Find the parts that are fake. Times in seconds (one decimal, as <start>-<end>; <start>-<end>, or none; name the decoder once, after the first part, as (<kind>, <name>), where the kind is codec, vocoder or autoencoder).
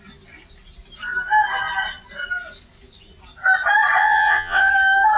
4.0-4.7 (vocoder, WaveNeXt)